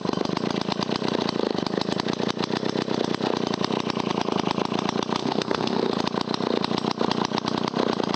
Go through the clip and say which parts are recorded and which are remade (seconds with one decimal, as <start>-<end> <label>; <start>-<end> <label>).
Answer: 0.0-5.2 recorded; 5.2-5.9 remade; 5.9-8.2 recorded

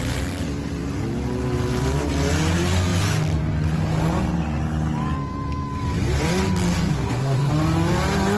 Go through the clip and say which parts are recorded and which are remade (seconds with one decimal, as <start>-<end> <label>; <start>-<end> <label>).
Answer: 0.0-6.9 recorded; 6.9-7.5 remade; 7.5-8.4 recorded

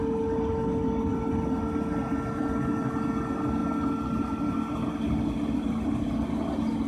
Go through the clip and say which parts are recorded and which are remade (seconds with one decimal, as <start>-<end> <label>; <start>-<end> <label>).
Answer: 0.0-6.9 recorded

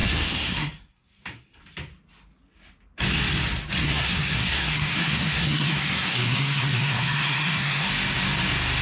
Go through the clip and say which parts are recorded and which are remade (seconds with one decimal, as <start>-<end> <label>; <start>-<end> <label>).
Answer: 0.0-1.6 remade; 1.6-3.8 recorded; 3.8-7.9 remade; 7.9-8.8 recorded

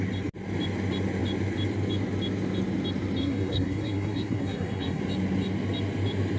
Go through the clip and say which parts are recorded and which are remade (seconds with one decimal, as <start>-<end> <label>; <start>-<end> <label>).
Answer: 0.0-3.2 recorded; 3.2-5.0 remade; 5.0-6.4 recorded

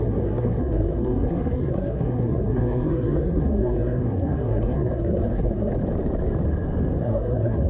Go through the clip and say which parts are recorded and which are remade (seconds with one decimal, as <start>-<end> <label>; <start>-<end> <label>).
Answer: 0.0-5.7 remade; 5.7-7.0 recorded; 7.0-7.7 remade